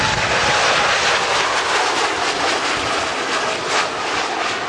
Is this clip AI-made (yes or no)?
no